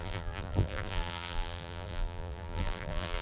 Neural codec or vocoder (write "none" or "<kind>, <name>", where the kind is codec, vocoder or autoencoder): vocoder, BigVGAN v2